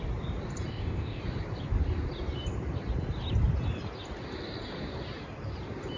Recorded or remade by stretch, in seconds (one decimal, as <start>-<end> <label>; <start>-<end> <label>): 0.0-0.7 recorded; 0.7-1.2 remade; 1.2-6.0 recorded